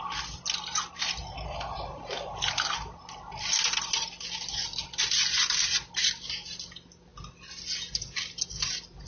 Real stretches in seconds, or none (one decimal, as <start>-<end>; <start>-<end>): 0.0-9.1